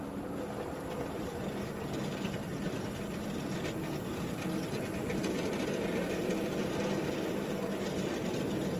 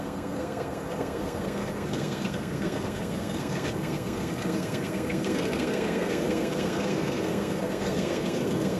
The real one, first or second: first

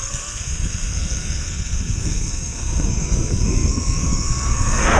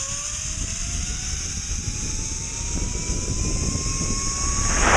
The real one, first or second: second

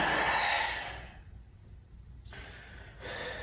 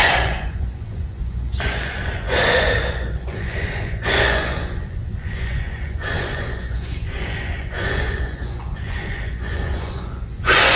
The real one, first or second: first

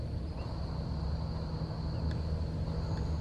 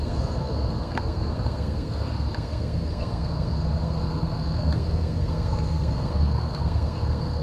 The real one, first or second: first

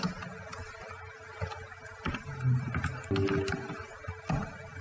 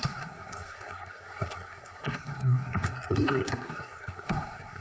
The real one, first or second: first